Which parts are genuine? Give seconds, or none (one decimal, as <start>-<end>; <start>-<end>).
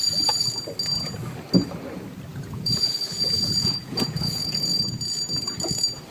0.0-2.3; 4.8-6.1